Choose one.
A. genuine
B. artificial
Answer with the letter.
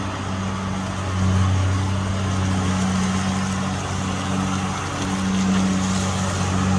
A